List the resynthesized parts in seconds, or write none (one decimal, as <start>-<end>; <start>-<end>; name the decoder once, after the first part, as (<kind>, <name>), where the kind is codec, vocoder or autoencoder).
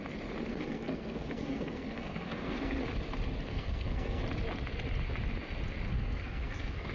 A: 0.5-2.8 (codec, SNAC); 3.5-4.2; 5.9-6.9